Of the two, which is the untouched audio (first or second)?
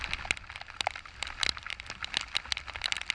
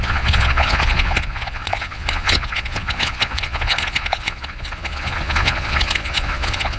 first